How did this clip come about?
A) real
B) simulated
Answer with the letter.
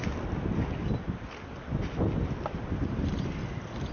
A